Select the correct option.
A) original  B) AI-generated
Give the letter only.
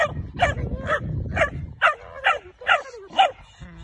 A